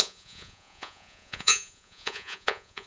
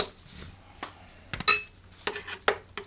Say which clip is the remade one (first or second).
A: first